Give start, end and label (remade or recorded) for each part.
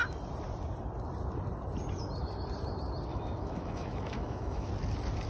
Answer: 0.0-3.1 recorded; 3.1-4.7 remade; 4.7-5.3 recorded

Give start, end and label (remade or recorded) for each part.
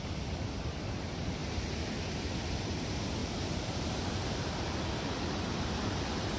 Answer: 0.0-1.4 recorded; 1.4-2.5 remade; 2.5-3.2 recorded; 3.2-4.6 remade; 4.6-6.4 recorded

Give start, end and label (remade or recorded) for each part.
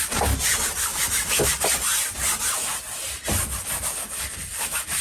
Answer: 0.0-0.9 recorded; 0.9-1.5 remade; 1.5-5.0 recorded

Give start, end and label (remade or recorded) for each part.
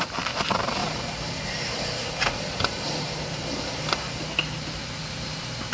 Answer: 0.0-0.8 recorded; 0.8-4.2 remade; 4.2-5.7 recorded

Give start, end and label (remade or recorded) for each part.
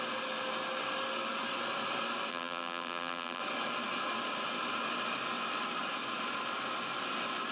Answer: 0.0-2.3 recorded; 2.3-3.4 remade; 3.4-7.5 recorded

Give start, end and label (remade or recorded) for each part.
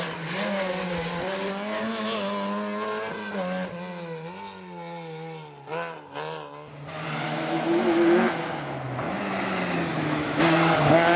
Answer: 0.0-9.9 recorded; 9.9-10.4 remade; 10.4-11.2 recorded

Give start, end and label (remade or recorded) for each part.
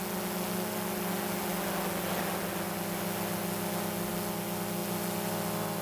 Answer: 0.0-5.8 recorded